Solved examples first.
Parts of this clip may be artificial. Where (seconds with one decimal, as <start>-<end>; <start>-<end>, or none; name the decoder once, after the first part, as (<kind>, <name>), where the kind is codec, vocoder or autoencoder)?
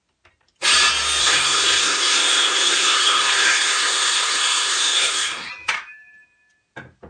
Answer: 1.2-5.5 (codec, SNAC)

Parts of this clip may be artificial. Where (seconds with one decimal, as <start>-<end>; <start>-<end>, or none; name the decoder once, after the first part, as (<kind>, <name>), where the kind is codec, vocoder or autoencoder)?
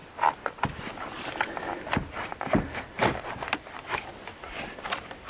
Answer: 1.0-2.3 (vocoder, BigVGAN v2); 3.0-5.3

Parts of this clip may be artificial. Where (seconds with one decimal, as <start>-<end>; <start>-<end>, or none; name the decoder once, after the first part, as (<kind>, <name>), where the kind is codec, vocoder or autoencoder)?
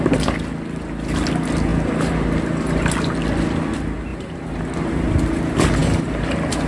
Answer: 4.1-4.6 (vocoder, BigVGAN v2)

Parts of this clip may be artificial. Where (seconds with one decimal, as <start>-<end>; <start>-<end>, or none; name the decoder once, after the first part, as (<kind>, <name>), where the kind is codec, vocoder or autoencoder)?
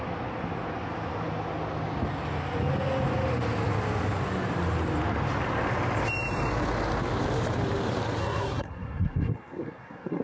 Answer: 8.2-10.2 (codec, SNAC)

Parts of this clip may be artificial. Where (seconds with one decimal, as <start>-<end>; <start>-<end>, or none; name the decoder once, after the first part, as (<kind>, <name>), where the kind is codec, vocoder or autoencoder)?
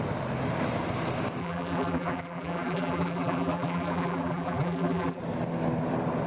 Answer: 1.4-5.2 (vocoder, BigVGAN v2)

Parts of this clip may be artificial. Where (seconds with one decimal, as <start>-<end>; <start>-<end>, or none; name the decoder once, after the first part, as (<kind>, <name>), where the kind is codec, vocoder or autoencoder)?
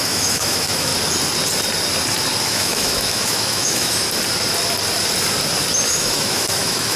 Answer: 0.0-0.9 (autoencoder, DAC-VAE); 2.4-4.0; 5.8-7.0